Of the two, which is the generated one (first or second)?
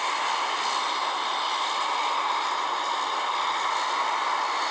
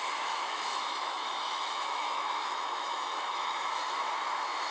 second